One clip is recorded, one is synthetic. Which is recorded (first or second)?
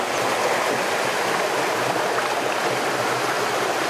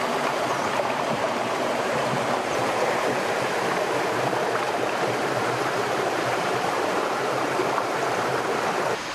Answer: first